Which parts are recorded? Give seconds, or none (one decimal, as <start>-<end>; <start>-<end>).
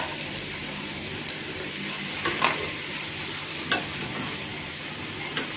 0.0-0.6; 4.0-5.6